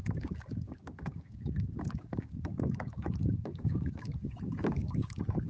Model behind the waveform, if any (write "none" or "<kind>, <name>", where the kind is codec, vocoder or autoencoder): codec, DAC